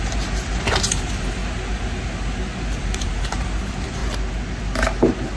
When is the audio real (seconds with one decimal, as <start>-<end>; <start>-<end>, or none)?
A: 1.4-2.8; 4.0-5.4